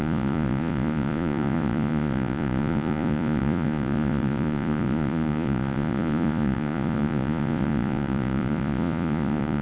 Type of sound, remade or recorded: remade